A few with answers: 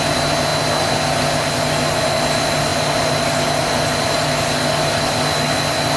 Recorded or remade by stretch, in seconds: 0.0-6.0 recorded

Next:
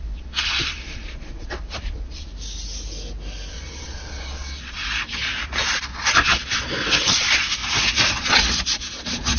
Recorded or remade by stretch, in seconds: 0.0-2.3 remade; 2.3-3.5 recorded; 3.5-4.8 remade; 4.8-5.8 recorded; 5.8-7.6 remade; 7.6-8.1 recorded; 8.1-9.4 remade

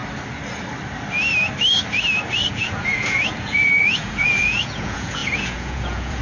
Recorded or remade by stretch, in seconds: 0.0-2.5 recorded; 2.5-6.2 remade

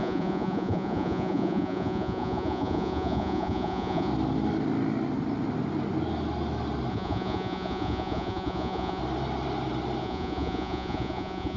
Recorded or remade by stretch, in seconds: 0.0-4.1 remade; 4.1-6.9 recorded; 6.9-9.0 remade; 9.0-10.0 recorded; 10.0-11.6 remade

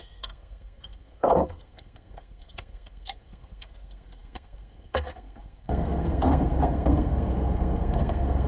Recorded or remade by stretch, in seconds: 0.0-8.5 remade

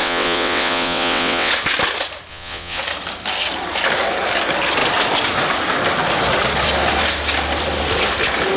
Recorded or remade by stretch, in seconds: 0.0-1.5 remade; 1.5-2.3 recorded; 2.3-2.8 remade; 2.8-8.6 recorded